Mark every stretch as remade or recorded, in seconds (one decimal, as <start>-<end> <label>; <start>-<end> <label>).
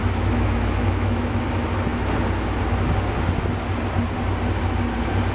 0.0-1.4 remade; 1.4-5.3 recorded